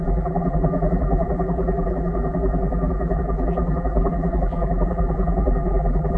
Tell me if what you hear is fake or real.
fake